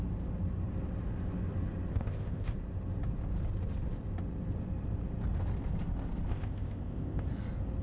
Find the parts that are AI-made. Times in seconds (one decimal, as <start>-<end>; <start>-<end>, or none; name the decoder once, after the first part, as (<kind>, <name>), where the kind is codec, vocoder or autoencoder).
1.9-2.5 (codec, ZipCodec); 6.3-7.3